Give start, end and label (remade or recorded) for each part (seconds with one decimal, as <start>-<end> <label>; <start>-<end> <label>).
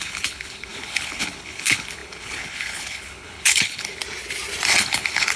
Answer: 0.0-4.0 remade; 4.0-4.8 recorded; 4.8-5.4 remade